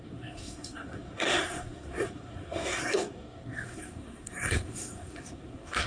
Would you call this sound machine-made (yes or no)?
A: yes